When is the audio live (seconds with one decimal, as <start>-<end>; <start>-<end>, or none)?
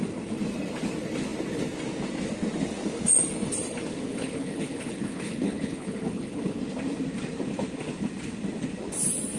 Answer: 0.0-4.1; 6.6-9.4